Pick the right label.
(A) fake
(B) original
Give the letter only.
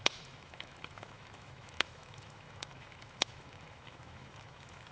A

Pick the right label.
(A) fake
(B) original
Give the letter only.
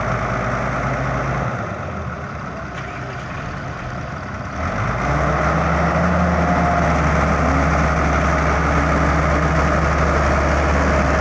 B